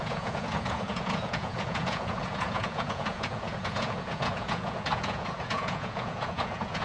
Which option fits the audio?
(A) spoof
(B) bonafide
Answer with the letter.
A